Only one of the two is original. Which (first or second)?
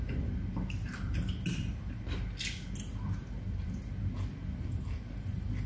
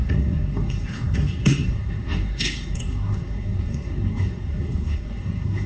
first